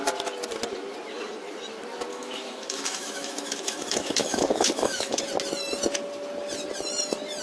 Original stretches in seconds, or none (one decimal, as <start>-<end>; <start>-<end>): 0.0-2.1; 5.2-7.4